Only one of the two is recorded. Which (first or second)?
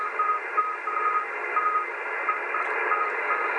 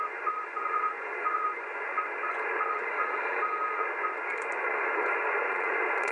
first